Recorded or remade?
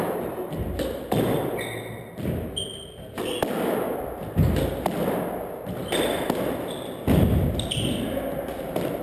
recorded